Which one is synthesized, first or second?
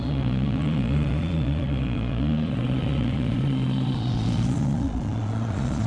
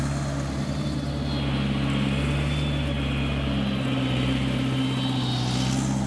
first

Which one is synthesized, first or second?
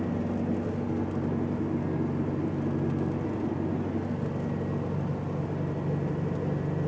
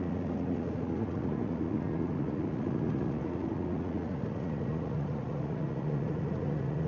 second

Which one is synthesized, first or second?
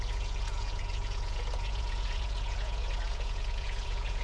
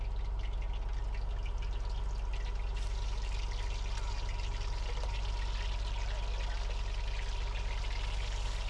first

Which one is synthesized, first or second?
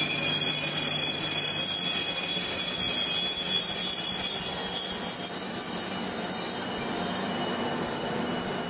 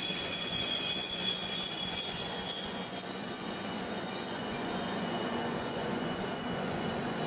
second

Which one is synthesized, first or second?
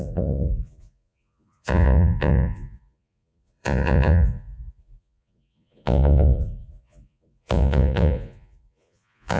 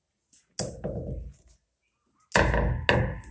first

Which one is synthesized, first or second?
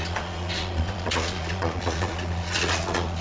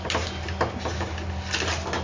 first